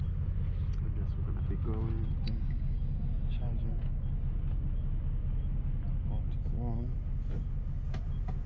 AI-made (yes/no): no